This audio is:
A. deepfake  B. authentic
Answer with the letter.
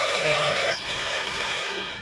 A